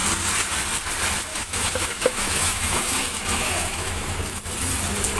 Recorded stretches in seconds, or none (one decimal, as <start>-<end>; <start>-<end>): 0.0-1.3; 4.4-5.2